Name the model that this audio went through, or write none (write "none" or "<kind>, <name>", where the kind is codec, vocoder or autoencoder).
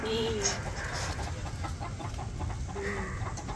none